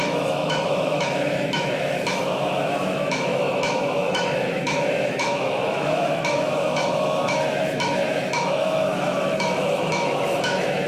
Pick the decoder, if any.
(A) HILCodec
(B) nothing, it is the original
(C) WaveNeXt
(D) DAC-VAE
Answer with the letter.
D